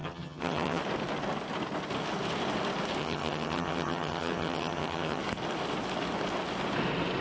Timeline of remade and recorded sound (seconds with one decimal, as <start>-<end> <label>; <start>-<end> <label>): 0.0-0.8 remade; 0.8-3.0 recorded; 3.0-5.2 remade; 5.2-7.2 recorded